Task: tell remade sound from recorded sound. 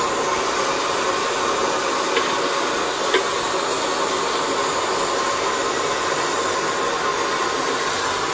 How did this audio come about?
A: recorded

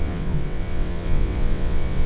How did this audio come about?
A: remade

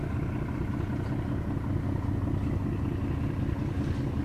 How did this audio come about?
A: recorded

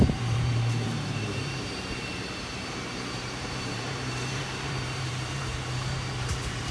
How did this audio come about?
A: remade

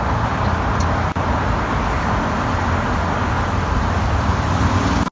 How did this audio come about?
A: recorded